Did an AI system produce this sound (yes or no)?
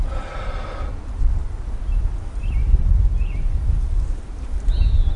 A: no